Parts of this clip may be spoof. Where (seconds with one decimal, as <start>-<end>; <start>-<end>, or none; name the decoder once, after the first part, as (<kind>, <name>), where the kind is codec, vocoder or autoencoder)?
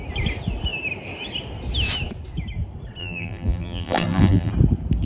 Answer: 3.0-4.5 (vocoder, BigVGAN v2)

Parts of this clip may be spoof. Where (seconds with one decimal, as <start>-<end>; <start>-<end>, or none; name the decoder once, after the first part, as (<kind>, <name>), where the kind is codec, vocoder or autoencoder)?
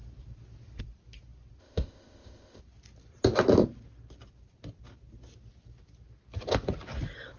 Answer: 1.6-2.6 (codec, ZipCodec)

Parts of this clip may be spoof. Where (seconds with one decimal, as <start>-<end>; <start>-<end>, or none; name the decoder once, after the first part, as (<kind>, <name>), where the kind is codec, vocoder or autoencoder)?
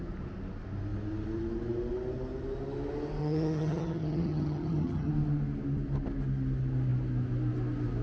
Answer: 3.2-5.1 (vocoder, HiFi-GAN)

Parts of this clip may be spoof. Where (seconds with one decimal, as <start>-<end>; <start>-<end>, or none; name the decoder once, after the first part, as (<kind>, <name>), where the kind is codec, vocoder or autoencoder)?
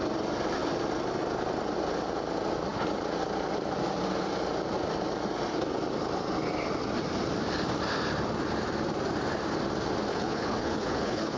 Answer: 10.1-11.4 (codec, HILCodec)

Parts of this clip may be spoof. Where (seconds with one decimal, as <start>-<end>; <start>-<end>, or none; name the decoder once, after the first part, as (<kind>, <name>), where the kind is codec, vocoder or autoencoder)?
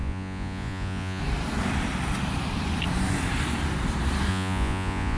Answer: 0.0-1.2 (vocoder, Vocos); 4.3-5.2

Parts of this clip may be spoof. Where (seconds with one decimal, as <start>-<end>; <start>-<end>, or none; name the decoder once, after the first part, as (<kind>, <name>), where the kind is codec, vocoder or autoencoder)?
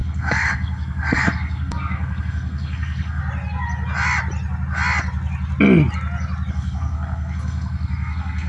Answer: 0.0-3.2 (codec, SNAC); 6.5-8.5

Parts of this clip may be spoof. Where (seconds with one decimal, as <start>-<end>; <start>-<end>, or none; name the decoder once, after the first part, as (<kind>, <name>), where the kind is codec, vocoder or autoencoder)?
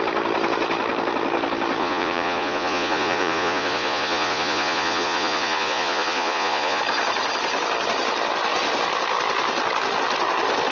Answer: 1.8-6.8 (vocoder, Vocos)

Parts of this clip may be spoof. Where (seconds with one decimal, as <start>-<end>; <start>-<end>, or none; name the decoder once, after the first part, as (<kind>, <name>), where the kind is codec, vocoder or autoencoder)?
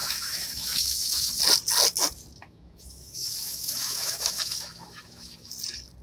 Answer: 0.0-1.3 (autoencoder, DAC-VAE); 2.4-5.5